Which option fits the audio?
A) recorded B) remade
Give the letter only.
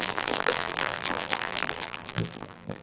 B